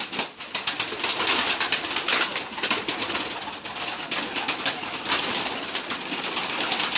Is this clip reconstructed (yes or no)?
no